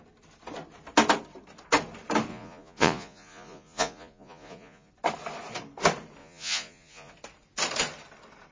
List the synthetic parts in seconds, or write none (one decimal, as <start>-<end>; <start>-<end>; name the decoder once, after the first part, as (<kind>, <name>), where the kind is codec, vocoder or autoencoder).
2.3-4.9 (vocoder, Vocos); 6.2-7.1